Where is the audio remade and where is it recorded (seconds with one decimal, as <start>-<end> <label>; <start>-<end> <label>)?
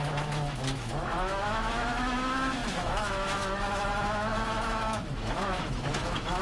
0.0-6.4 remade